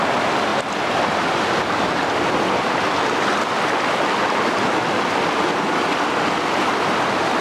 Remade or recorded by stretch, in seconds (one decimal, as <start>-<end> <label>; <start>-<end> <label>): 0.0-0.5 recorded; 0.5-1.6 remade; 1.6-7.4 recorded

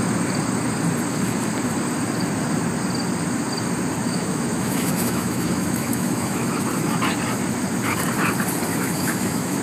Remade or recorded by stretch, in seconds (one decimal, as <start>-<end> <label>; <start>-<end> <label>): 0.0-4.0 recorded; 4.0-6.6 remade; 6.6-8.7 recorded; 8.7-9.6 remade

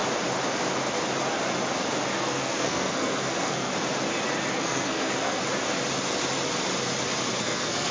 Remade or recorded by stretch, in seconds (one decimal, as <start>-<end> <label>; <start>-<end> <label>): 0.0-2.2 recorded; 2.2-3.7 remade; 3.7-4.5 recorded; 4.5-5.4 remade; 5.4-7.4 recorded; 7.4-7.9 remade

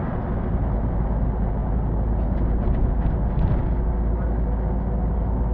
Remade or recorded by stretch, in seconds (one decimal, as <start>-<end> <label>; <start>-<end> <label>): 0.0-5.5 recorded

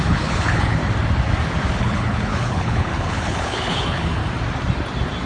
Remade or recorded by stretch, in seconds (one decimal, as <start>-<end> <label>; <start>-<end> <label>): 0.0-0.8 remade; 0.8-1.8 recorded; 1.8-4.2 remade; 4.2-5.3 recorded

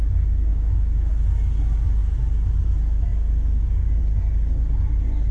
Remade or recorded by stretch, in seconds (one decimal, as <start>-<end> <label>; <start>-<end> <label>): 0.0-0.5 recorded; 0.5-1.1 remade; 1.1-5.3 recorded